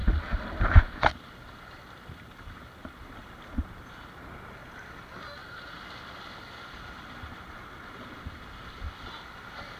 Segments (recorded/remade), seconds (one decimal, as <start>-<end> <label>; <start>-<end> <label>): 0.0-9.8 recorded